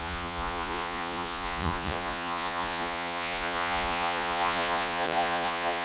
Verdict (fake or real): fake